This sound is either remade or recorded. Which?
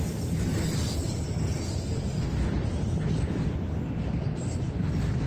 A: recorded